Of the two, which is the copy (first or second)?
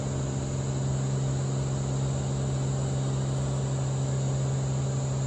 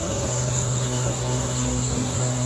second